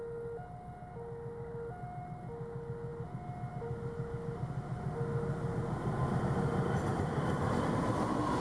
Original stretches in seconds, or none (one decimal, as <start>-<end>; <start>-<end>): 0.0-6.9; 7.7-8.4